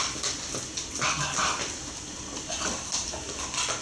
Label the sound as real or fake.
real